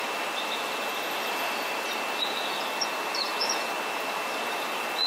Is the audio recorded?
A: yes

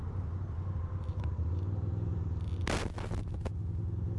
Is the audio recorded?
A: yes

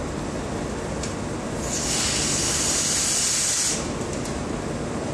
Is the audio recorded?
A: yes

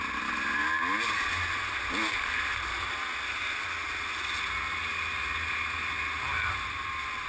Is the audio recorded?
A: yes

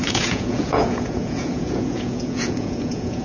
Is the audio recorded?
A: no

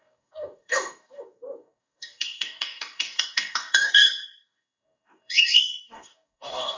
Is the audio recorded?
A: no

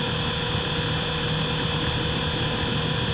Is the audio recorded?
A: yes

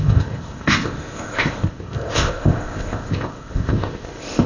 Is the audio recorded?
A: no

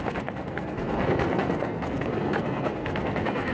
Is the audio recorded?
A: no